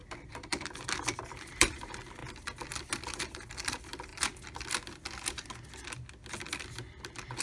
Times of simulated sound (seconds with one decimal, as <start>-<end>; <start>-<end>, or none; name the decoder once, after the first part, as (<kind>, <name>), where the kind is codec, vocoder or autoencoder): 0.0-2.2 (vocoder, BigVGAN v2); 2.7-4.1; 6.6-7.4